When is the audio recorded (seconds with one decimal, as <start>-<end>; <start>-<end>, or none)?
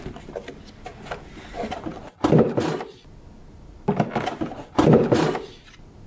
0.0-6.1